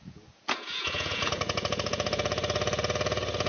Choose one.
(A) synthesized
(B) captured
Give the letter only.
A